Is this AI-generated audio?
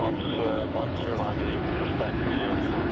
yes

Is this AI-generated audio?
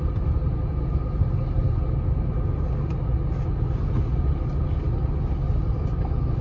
no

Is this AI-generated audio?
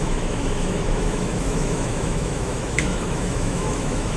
yes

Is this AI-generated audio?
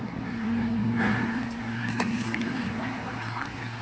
yes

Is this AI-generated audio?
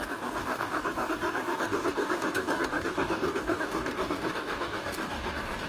yes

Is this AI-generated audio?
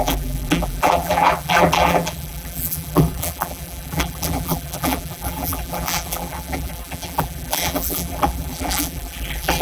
yes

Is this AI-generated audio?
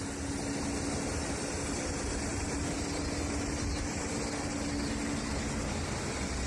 no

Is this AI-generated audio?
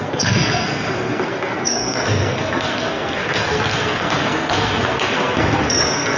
yes